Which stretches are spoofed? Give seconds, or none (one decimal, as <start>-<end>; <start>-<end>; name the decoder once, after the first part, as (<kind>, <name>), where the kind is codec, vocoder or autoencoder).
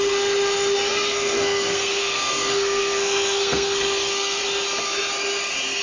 0.9-4.4 (codec, SNAC)